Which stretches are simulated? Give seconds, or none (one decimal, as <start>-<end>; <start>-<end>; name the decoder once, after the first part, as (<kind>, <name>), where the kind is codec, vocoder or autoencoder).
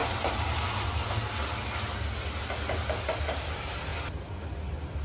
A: none